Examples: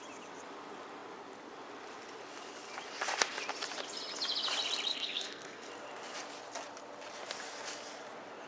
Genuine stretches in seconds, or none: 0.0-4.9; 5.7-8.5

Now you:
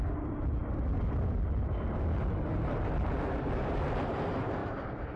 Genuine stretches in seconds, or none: 0.0-4.6

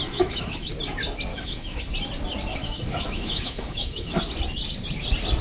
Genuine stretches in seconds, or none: 0.7-1.3; 1.9-2.5; 4.2-5.4

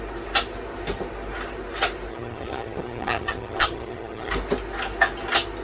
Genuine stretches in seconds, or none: 0.0-2.1; 4.3-5.6

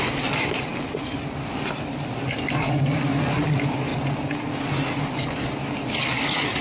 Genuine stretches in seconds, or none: 0.7-2.1; 3.9-5.9

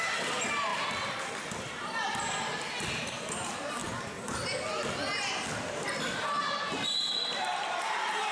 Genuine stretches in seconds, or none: 2.5-3.0; 3.8-6.4

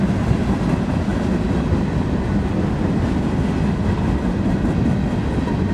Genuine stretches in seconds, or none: 0.0-1.1; 3.5-5.7

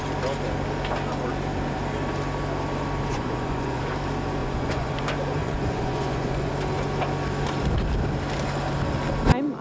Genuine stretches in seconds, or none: 0.0-3.1; 3.8-4.4; 5.0-5.4; 6.5-9.6